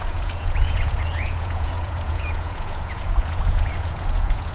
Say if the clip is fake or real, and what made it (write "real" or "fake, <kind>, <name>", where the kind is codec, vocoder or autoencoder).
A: fake, vocoder, Vocos